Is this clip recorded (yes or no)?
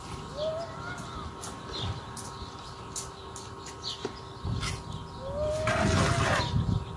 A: yes